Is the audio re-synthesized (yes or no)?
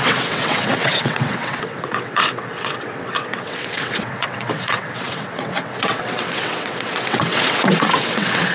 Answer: yes